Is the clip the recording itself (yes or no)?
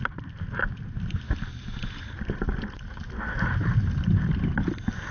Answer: yes